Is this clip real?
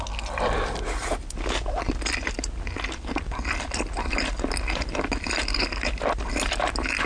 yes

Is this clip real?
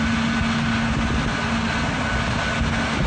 yes